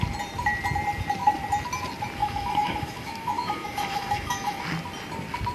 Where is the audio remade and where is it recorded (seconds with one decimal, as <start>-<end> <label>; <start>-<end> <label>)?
0.0-2.2 recorded; 2.2-4.6 remade; 4.6-5.5 recorded